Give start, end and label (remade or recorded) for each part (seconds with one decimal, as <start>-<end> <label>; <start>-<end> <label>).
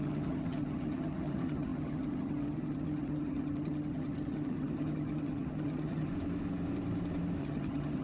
0.0-6.1 remade; 6.1-7.4 recorded; 7.4-8.0 remade